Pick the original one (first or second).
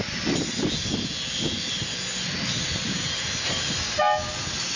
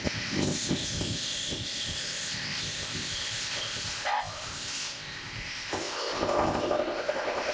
first